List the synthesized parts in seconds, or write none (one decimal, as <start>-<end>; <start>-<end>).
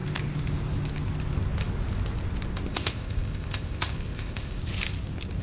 2.7-4.6